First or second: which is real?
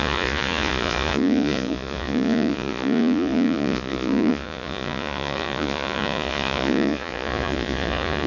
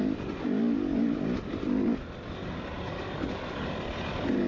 second